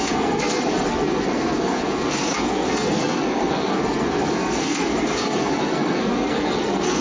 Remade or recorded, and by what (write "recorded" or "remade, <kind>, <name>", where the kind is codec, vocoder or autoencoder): remade, codec, SNAC